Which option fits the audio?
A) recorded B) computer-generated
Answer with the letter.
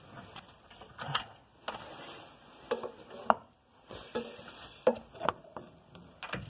A